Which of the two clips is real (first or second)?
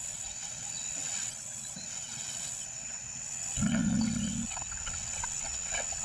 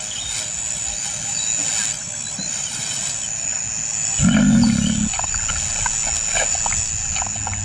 second